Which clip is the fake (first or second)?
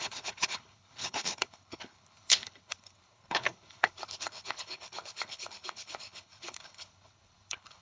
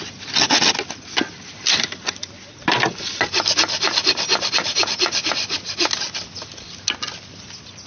first